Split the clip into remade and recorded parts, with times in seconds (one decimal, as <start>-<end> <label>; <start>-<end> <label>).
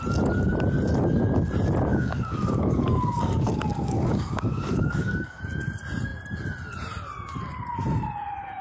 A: 0.0-1.9 recorded; 1.9-5.4 remade; 5.4-8.6 recorded